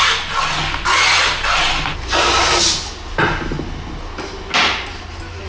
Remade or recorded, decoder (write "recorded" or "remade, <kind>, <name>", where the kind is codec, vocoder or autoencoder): recorded